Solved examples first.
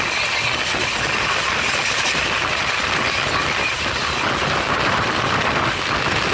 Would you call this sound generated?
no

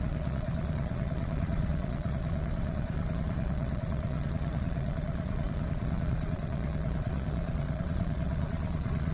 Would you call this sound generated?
yes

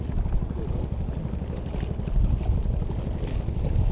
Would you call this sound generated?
no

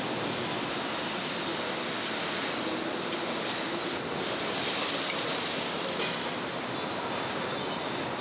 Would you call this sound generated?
no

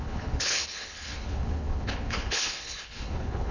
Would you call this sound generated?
yes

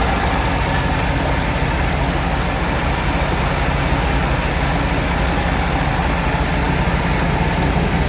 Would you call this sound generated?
no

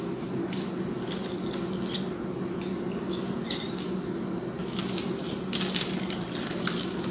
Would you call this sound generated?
no